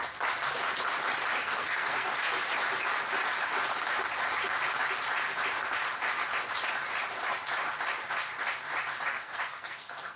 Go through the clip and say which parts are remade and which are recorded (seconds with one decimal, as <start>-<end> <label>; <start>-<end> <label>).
0.0-1.4 recorded; 1.4-2.1 remade; 2.1-9.1 recorded; 9.1-10.2 remade